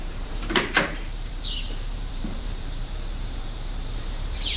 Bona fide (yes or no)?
no